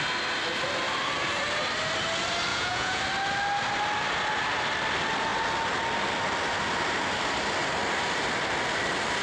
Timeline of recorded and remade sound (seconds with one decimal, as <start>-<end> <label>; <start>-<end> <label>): 0.0-2.5 recorded; 2.5-3.0 remade; 3.0-9.2 recorded